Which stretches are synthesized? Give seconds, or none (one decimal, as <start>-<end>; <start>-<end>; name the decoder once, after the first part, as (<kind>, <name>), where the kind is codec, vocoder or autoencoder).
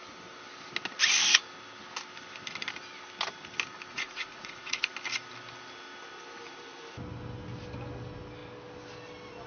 3.9-4.9 (vocoder, Vocos)